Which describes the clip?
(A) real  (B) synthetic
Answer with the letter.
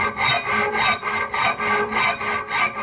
A